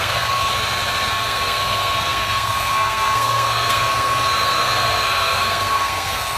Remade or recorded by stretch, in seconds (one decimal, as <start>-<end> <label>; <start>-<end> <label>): 0.0-0.5 remade; 0.5-1.1 recorded; 1.1-6.4 remade